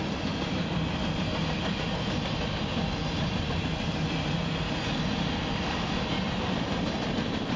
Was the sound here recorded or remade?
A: recorded